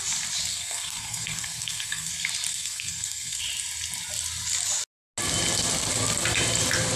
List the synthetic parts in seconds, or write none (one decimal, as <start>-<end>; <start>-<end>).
0.5-2.1; 2.5-3.4